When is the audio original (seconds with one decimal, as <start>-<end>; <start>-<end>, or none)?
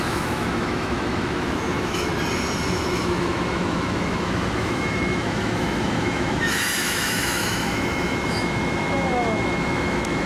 2.1-2.7